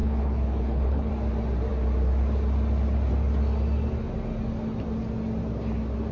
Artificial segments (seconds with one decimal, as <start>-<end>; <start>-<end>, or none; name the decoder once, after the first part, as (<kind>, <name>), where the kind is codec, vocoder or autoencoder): 0.0-1.1 (codec, HILCodec)